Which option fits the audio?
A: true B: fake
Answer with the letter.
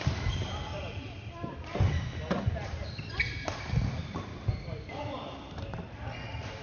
A